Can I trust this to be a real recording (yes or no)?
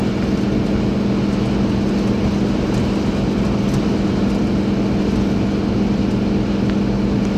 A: yes